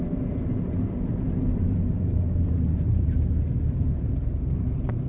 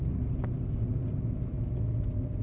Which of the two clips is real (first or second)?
second